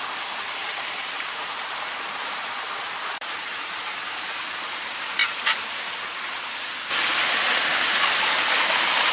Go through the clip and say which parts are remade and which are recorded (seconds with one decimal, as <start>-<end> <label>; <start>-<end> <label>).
0.0-0.6 recorded; 0.6-4.3 remade; 4.3-5.2 recorded; 5.2-5.8 remade; 5.8-9.1 recorded